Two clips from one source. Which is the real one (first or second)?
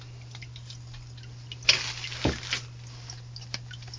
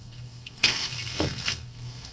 first